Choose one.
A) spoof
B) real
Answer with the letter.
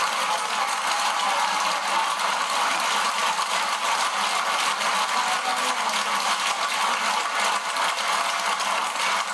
B